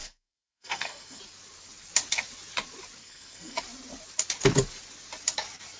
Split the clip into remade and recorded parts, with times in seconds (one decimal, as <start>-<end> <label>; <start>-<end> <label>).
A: 0.0-1.2 remade; 1.2-3.0 recorded; 3.0-3.6 remade; 3.6-5.8 recorded